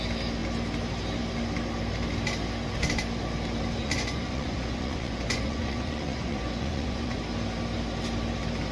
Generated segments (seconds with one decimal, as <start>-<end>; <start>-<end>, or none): 3.8-7.2